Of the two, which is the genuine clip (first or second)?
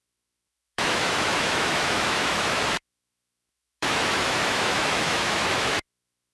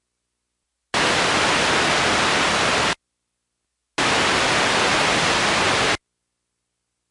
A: second